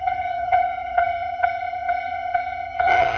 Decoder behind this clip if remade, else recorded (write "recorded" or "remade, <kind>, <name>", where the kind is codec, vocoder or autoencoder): remade, vocoder, HiFi-GAN